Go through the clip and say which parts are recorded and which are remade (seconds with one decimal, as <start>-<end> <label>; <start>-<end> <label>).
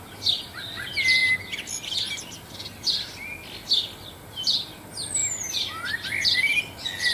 0.0-7.1 recorded